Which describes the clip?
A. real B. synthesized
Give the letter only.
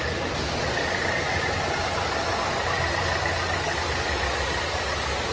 A